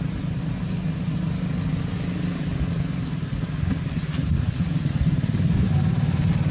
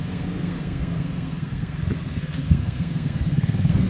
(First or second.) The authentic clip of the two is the first